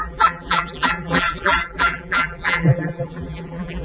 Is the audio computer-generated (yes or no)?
yes